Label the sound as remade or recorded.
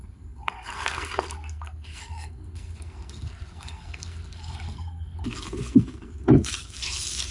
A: remade